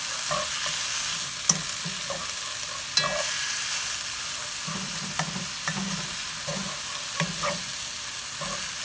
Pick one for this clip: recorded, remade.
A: recorded